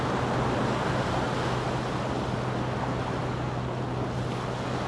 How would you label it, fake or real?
real